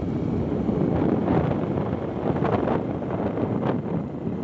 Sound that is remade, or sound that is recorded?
recorded